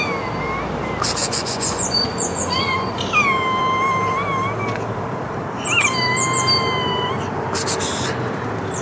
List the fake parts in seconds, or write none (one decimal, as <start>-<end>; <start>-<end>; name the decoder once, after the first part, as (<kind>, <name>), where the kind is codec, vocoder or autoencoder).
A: 1.2-2.9 (vocoder, Vocos)